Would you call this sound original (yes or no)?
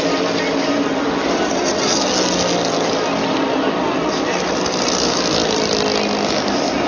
yes